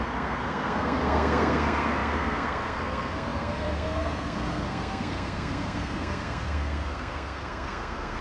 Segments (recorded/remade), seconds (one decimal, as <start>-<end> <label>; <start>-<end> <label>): 0.0-8.2 remade